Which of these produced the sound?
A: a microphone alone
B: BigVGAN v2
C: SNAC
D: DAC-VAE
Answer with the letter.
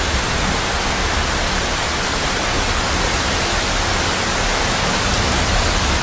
A